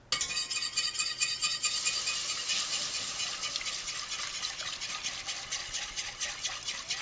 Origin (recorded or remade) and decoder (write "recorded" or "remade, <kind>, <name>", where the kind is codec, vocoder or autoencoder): recorded